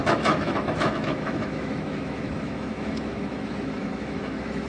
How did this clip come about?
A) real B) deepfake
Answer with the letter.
B